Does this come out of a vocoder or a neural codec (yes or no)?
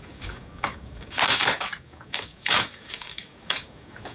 yes